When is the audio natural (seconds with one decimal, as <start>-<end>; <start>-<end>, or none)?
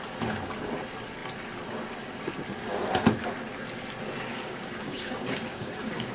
0.0-4.3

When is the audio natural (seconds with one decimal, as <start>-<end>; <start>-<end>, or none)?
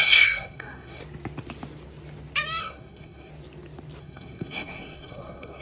1.0-2.6; 3.3-4.0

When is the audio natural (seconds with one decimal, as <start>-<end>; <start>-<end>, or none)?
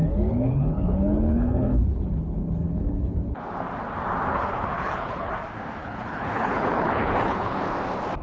3.4-4.3; 5.3-5.8; 7.6-8.2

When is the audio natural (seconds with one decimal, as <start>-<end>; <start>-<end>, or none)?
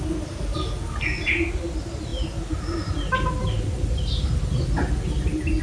0.0-5.6